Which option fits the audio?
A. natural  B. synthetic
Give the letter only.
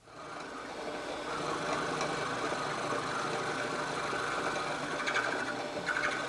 A